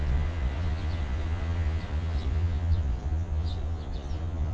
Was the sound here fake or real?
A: fake